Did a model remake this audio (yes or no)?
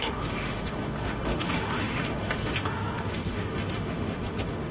yes